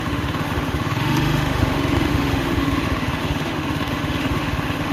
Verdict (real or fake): fake